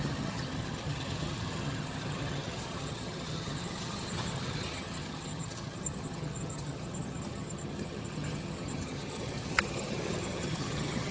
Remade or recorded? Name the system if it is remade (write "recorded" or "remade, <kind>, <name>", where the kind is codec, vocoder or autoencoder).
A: remade, vocoder, HiFi-GAN